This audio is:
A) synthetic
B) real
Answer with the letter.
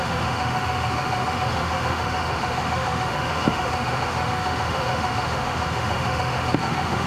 A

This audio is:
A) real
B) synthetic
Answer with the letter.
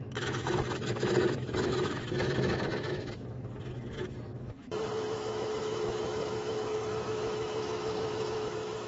B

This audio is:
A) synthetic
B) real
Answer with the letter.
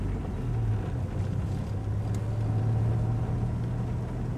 B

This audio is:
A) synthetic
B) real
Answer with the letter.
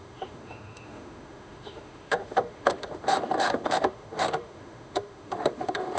A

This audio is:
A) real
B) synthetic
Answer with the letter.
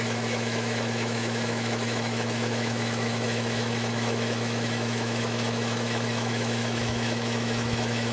B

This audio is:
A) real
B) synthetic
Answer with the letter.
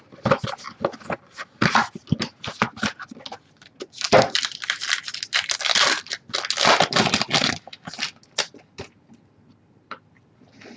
A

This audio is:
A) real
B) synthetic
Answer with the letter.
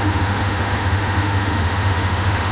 B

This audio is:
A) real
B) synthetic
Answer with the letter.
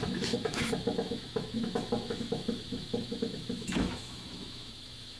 B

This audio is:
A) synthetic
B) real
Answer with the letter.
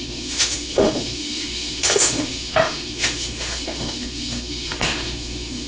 A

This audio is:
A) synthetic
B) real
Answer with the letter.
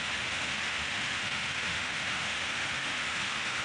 A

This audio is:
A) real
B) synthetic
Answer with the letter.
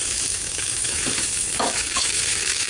B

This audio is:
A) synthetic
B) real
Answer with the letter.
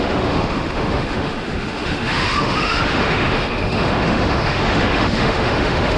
A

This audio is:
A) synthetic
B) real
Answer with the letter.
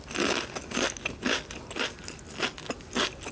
B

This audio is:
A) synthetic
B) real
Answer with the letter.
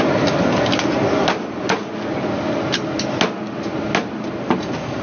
B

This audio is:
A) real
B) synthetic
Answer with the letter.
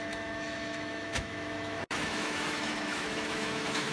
B